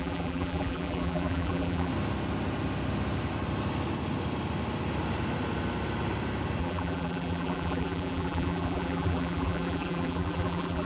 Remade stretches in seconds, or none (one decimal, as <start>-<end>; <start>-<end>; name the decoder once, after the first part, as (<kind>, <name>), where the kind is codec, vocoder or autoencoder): 0.0-1.9 (vocoder, BigVGAN v2); 6.6-10.9